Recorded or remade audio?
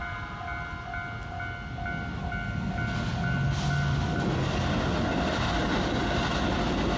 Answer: recorded